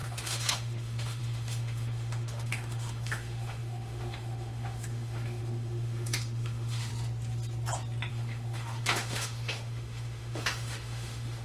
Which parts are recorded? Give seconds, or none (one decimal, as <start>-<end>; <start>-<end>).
6.9-8.1